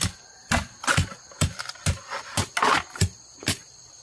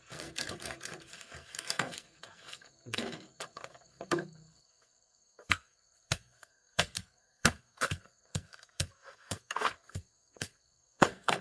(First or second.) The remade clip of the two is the second